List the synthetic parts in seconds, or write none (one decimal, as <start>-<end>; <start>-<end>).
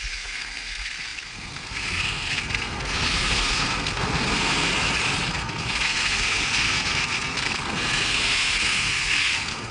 0.0-4.7; 5.3-9.7